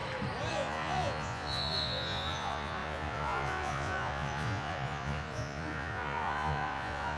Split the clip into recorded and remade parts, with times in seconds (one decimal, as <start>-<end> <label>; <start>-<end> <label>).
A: 0.0-0.5 recorded; 0.5-7.2 remade